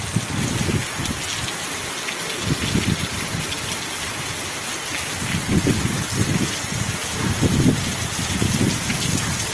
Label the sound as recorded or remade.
recorded